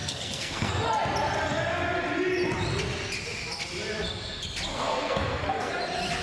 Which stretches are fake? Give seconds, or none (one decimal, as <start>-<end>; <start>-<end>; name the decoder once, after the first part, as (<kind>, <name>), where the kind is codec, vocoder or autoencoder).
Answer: 0.0-0.7 (codec, SNAC); 4.7-5.7